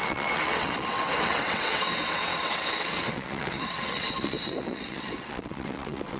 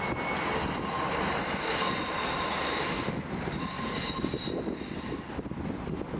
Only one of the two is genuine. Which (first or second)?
second